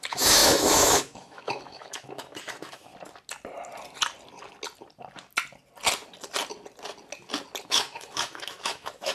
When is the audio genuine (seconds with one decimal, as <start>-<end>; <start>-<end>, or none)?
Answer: 2.9-7.6